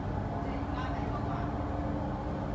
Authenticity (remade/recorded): recorded